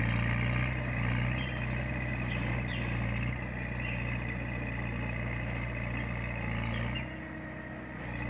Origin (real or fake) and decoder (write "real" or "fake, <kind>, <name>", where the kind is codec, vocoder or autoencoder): real